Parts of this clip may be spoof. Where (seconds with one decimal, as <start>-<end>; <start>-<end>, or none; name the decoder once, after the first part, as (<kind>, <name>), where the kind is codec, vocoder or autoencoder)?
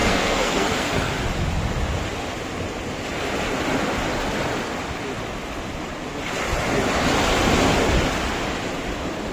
0.0-1.1 (codec, SNAC)